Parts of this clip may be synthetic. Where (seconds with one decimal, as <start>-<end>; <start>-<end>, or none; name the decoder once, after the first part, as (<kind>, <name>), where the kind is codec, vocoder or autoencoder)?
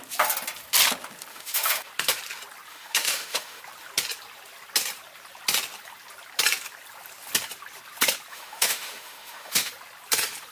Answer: 1.3-1.9 (autoencoder, DAC-VAE); 2.7-3.6; 8.3-9.7